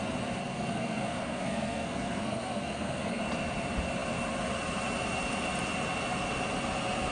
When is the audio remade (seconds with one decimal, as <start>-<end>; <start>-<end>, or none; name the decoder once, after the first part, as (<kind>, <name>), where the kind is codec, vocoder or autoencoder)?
0.4-3.2 (codec, SNAC)